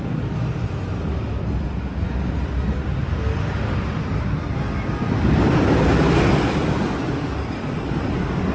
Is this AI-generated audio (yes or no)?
no